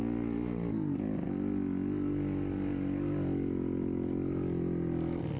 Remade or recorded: recorded